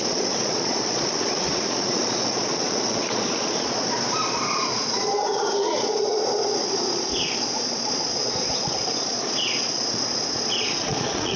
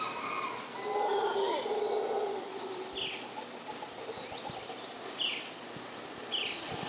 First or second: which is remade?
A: first